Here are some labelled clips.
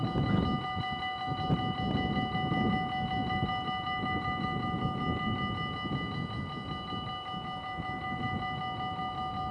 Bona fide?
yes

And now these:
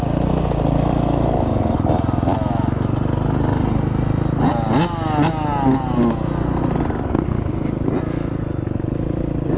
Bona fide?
yes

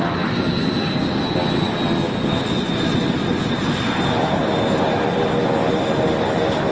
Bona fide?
yes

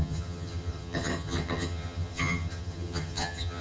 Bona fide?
no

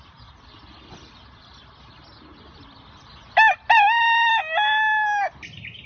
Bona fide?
yes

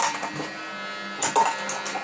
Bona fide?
yes